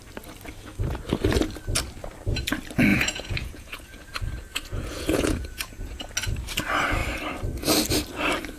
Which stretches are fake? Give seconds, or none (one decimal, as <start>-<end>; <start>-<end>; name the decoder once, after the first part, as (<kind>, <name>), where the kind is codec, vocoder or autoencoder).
2.9-6.0 (vocoder, Vocos)